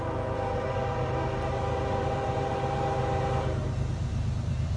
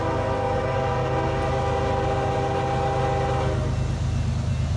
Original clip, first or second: second